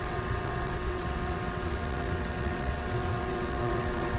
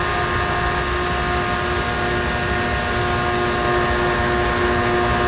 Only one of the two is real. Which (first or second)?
second